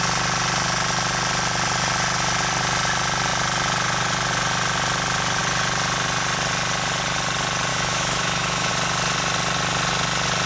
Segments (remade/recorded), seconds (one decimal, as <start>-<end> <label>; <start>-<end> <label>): 0.0-7.7 recorded; 7.7-8.7 remade; 8.7-10.5 recorded